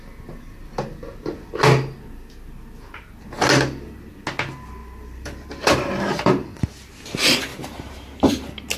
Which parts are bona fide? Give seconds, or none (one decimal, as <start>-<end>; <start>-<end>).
0.0-4.8; 6.9-7.5; 8.3-8.8

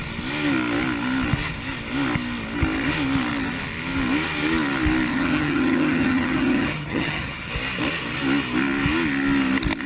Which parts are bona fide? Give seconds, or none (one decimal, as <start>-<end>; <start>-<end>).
0.0-5.1; 7.5-9.9